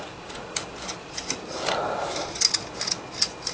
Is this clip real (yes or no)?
yes